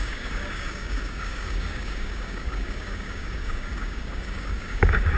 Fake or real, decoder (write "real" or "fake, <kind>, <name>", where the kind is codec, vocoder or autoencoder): fake, codec, DAC